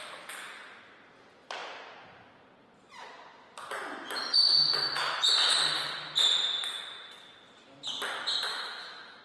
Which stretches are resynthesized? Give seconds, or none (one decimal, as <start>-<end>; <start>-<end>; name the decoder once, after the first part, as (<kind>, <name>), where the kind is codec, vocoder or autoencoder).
8.5-9.2 (autoencoder, DAC-VAE)

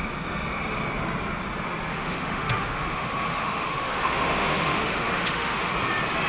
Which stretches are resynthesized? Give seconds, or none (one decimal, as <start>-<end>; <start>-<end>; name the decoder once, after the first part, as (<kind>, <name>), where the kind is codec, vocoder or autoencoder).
1.9-5.7 (autoencoder, DAC-VAE)